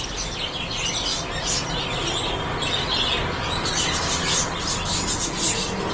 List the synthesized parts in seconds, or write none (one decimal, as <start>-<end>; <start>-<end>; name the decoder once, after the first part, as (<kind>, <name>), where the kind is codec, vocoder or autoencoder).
none